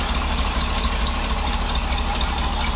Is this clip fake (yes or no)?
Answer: no